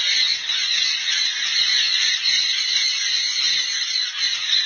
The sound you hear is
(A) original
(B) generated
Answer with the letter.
A